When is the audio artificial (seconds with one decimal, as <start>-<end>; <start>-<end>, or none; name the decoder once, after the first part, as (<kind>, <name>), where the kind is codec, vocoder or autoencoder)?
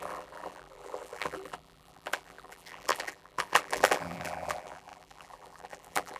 0.0-6.2 (vocoder, BigVGAN v2)